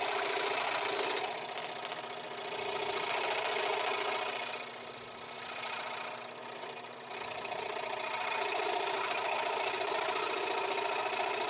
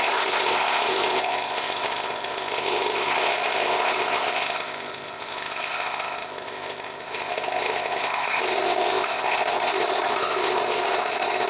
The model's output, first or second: second